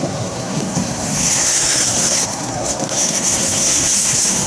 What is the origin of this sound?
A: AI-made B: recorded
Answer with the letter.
A